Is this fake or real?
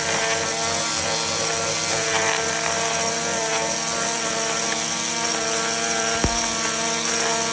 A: real